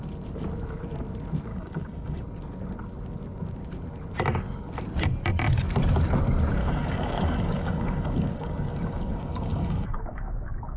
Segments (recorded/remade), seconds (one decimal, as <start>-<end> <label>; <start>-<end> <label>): 0.0-1.5 recorded; 1.5-2.2 remade; 2.2-6.6 recorded; 6.6-10.3 remade; 10.3-10.8 recorded